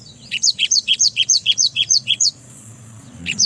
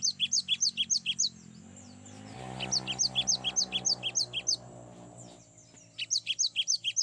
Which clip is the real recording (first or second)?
second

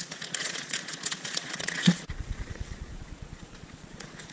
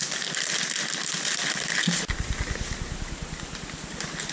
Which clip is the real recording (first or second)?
second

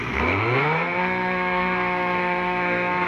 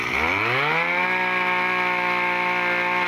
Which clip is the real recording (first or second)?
second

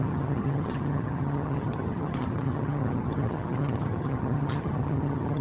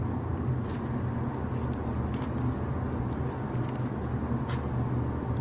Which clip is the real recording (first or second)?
second